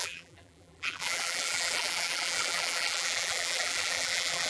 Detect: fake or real fake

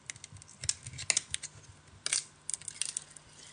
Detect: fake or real real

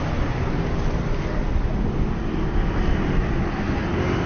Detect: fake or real real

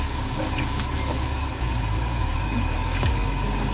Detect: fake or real fake